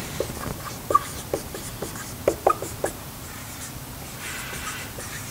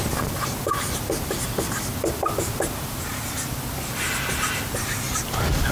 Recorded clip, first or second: second